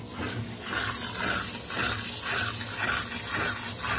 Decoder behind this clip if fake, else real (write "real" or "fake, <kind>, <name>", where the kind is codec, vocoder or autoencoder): real